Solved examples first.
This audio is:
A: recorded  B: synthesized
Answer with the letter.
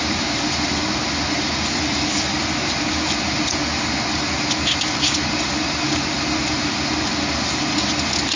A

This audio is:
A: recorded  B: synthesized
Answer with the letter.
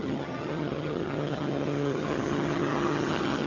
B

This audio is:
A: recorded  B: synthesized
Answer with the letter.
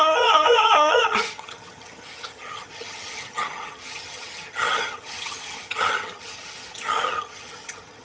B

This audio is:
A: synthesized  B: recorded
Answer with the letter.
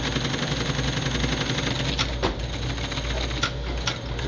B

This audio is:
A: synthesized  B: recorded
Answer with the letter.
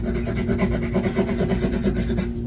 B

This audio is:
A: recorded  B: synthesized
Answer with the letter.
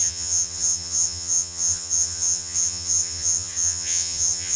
B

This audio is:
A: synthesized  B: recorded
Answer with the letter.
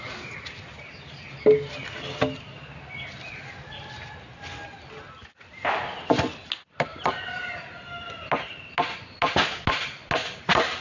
B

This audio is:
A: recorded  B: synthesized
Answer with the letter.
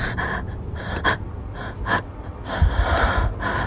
A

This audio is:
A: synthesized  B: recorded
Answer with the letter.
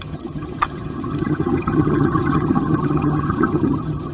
A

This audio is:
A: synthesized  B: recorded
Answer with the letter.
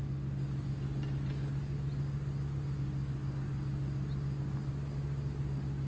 B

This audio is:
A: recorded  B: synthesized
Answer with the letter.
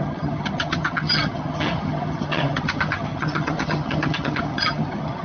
B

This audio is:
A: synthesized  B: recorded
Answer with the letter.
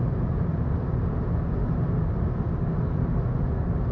B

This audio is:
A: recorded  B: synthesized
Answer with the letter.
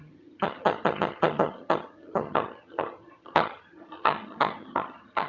B